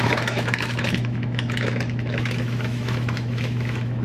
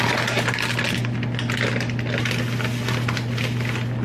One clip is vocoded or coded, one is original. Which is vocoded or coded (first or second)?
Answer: first